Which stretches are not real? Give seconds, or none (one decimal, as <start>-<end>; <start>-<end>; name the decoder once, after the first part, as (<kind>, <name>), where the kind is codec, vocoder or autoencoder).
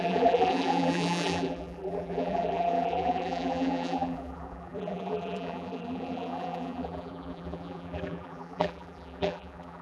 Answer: 0.0-9.8 (vocoder, BigVGAN v2)